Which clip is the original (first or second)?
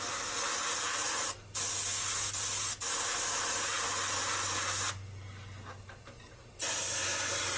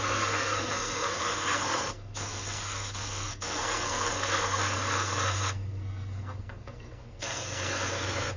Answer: first